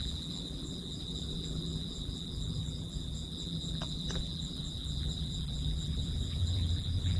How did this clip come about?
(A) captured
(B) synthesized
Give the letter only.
B